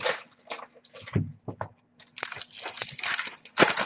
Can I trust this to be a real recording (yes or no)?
yes